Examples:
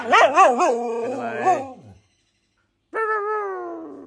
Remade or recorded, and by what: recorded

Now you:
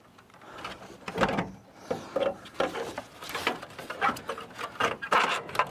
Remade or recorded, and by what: recorded